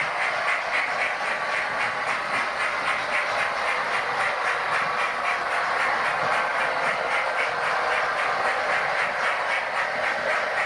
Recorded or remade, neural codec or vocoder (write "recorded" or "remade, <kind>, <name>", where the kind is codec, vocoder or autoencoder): recorded